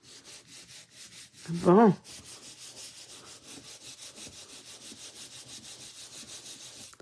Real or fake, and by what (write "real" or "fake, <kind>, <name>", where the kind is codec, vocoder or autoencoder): real